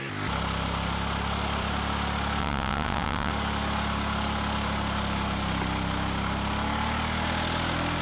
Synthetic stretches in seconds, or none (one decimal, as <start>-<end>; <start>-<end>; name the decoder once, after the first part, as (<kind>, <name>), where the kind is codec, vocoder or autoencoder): 2.4-3.3 (vocoder, WaveNeXt)

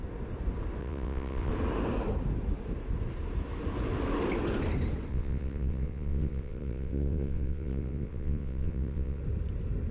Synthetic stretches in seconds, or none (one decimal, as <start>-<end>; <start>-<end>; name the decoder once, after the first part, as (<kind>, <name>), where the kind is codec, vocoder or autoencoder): 0.8-1.5 (vocoder, WaveNeXt); 5.1-9.2

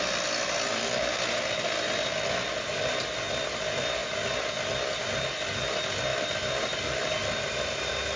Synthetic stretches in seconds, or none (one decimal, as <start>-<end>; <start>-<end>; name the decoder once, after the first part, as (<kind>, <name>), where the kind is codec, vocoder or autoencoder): none

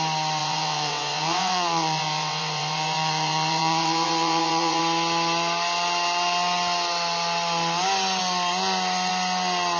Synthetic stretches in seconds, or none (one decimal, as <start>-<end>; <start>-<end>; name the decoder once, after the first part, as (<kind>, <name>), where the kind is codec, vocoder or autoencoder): 0.4-4.8 (vocoder, WaveNeXt)

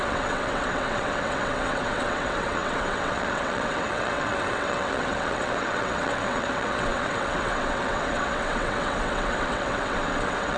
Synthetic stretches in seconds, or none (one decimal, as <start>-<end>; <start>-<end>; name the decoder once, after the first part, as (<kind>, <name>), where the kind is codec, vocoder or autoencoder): 0.0-10.6 (vocoder, WaveNeXt)

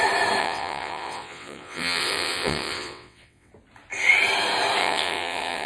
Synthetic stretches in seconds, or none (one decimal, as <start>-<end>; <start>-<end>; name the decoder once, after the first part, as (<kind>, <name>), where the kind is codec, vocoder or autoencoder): 0.4-3.5 (vocoder, WaveNeXt); 4.8-5.7